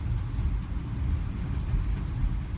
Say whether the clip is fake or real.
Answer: real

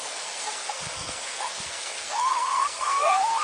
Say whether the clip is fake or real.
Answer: fake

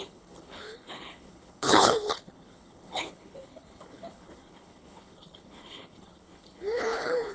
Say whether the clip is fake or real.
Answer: fake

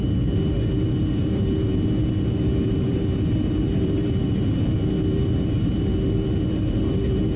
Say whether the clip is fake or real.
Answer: fake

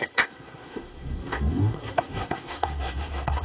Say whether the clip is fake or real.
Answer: fake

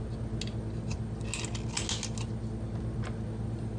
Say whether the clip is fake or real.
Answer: real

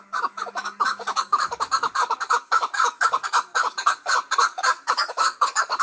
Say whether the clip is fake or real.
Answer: fake